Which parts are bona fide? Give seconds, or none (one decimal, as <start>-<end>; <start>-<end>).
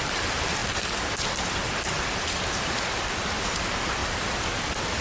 0.6-3.5; 4.0-4.6